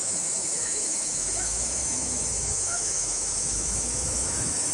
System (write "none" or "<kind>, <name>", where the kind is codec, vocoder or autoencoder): autoencoder, DAC-VAE